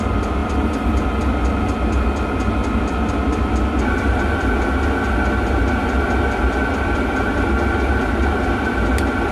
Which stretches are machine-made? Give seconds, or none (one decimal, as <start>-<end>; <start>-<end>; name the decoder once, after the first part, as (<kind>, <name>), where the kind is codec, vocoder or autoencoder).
none

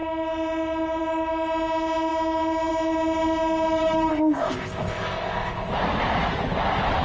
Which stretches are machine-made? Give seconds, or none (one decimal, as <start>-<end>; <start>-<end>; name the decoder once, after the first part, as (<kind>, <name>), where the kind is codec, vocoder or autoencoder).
4.1-5.7 (codec, ZipCodec)

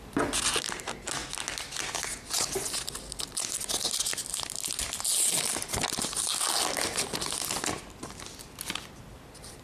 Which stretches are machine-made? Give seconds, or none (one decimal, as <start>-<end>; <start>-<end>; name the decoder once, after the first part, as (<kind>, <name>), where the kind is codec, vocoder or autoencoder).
none

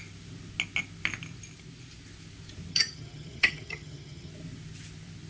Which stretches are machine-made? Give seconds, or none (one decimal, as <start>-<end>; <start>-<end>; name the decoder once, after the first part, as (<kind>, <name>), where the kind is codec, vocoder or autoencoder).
2.7-4.3 (vocoder, HiFi-GAN)